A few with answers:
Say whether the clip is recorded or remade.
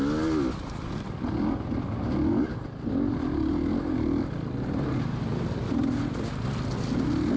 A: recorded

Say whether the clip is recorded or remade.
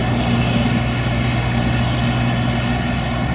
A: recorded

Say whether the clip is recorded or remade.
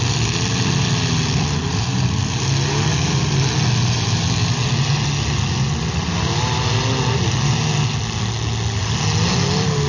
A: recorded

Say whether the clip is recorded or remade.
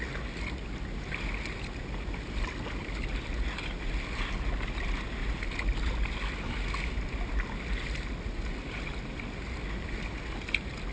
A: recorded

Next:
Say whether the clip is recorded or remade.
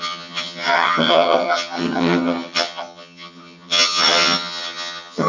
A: remade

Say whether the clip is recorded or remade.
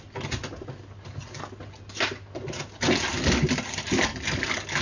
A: recorded